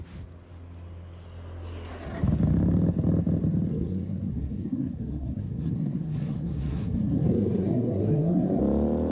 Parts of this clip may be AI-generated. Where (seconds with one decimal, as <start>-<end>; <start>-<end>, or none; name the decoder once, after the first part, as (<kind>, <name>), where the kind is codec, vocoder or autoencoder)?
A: 3.7-8.6 (codec, SNAC)